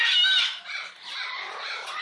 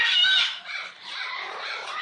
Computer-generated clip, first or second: second